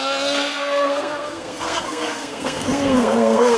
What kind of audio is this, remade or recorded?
remade